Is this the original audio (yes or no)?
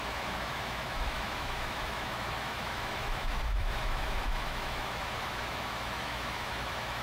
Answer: no